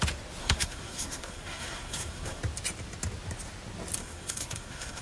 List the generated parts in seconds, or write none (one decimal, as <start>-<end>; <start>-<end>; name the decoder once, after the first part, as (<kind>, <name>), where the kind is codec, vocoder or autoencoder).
0.4-2.4 (codec, SNAC); 4.0-5.0